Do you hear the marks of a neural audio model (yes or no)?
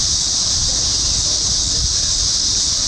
no